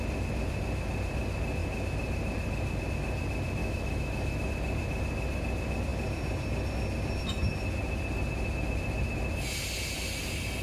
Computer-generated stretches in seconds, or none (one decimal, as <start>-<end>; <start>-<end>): 3.6-4.5